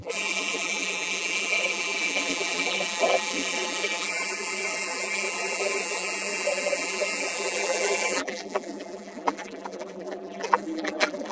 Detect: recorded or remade remade